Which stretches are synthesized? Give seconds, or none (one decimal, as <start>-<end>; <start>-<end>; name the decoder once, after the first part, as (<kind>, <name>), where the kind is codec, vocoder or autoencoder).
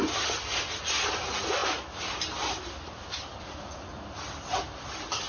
none